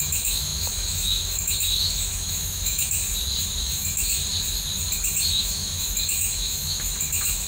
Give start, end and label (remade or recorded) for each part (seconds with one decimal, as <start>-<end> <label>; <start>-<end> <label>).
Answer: 0.0-3.0 remade; 3.0-3.6 recorded; 3.6-4.2 remade; 4.2-5.3 recorded; 5.3-7.5 remade